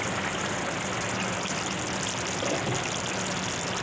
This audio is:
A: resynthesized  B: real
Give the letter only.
B